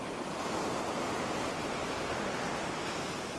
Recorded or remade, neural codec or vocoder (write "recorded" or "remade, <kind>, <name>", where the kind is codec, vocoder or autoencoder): recorded